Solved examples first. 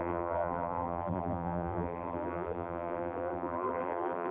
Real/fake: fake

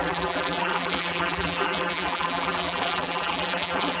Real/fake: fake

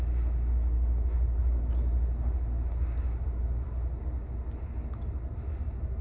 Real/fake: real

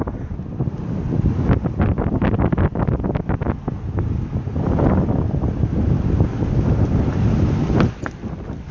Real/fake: real